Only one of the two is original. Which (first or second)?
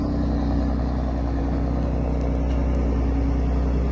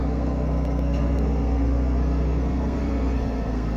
first